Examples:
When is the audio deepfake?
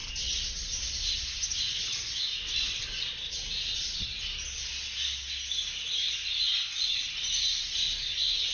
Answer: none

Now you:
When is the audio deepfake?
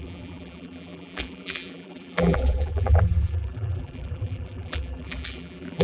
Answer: 0.0-5.8 (vocoder, BigVGAN v2)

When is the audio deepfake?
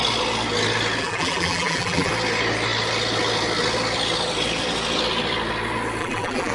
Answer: 1.0-2.1 (vocoder, BigVGAN v2); 6.0-6.5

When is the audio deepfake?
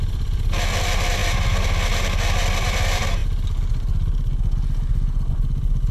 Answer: 0.0-1.2 (vocoder, BigVGAN v2); 2.2-3.2; 5.3-5.9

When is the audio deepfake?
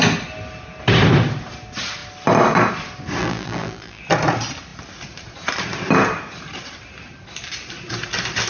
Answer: 3.2-4.0 (vocoder, BigVGAN v2)